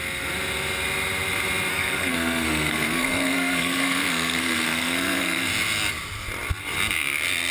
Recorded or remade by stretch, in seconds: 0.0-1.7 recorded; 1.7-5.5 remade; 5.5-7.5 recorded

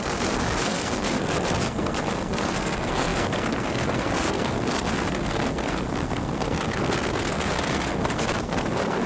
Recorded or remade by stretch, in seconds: 0.0-9.1 remade